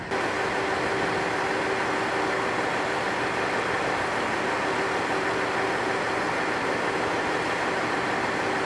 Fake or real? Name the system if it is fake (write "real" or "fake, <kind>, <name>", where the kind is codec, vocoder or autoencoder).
real